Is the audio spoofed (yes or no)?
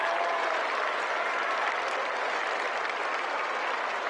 no